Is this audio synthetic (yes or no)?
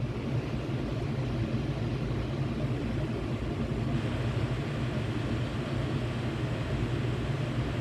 no